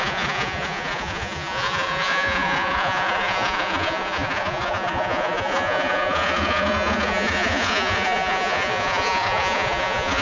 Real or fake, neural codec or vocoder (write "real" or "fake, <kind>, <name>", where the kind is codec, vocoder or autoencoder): fake, vocoder, Vocos